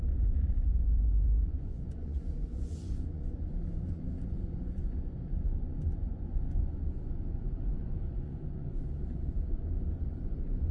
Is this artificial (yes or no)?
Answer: yes